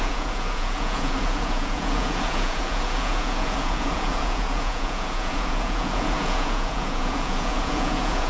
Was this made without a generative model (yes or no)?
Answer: no